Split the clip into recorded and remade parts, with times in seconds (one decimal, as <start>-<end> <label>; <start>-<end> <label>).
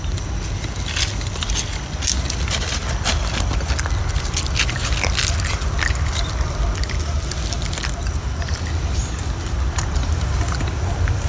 0.0-11.3 recorded